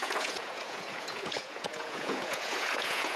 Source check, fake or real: fake